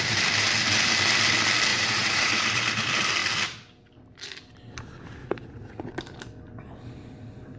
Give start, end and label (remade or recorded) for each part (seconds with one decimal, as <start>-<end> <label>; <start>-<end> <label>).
0.0-1.7 recorded; 1.7-2.3 remade; 2.3-5.2 recorded; 5.2-5.9 remade; 5.9-7.6 recorded